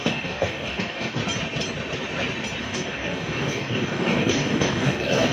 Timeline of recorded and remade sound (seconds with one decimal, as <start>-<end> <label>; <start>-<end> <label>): 0.0-1.2 remade; 1.2-2.6 recorded; 2.6-5.3 remade